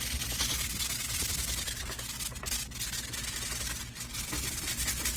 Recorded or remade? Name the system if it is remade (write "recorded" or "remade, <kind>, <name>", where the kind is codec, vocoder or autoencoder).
recorded